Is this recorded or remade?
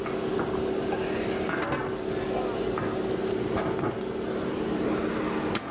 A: recorded